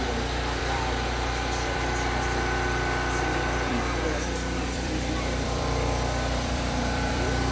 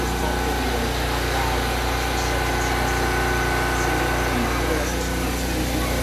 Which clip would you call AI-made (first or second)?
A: first